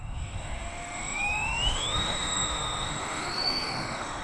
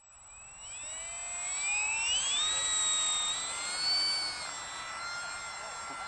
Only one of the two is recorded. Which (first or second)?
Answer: second